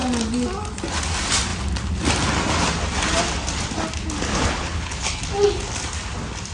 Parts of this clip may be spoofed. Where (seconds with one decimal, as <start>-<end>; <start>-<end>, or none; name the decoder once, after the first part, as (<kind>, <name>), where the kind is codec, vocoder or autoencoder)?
4.3-5.2 (codec, HILCodec)